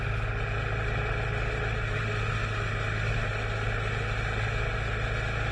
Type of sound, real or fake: real